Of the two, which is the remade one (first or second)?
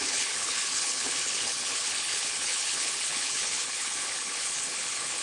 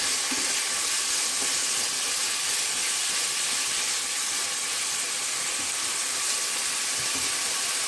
first